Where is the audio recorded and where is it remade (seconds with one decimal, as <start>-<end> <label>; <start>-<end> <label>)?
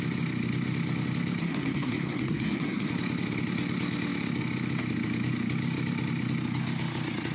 0.0-1.4 recorded; 1.4-2.9 remade; 2.9-7.3 recorded